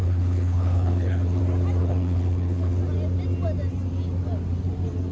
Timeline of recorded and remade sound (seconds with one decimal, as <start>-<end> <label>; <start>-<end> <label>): 0.0-1.4 remade; 1.4-1.8 recorded; 1.8-2.8 remade; 2.8-5.1 recorded